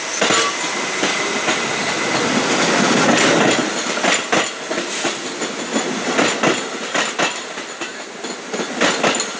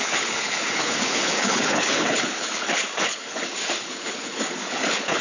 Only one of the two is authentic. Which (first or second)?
first